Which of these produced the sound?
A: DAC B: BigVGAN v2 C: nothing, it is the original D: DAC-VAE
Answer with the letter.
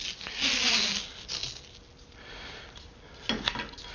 C